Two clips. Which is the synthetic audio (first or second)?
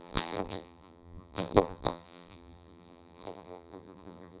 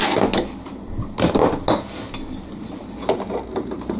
first